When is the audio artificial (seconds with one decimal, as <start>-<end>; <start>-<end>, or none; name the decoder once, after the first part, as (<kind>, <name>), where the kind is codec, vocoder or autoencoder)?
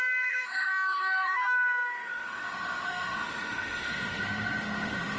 0.0-5.2 (autoencoder, DAC-VAE)